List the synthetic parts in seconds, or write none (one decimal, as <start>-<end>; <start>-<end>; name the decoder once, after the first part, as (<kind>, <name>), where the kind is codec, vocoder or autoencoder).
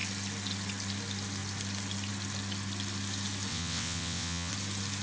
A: 3.5-4.5 (vocoder, WaveNeXt)